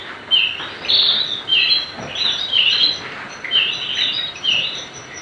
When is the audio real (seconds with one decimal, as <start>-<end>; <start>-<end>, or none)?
0.0-1.5; 3.0-4.2